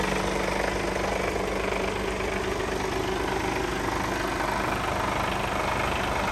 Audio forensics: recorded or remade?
recorded